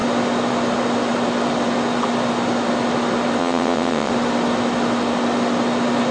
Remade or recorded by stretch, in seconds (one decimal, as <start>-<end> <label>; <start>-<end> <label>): 0.0-3.4 recorded; 3.4-4.1 remade; 4.1-6.1 recorded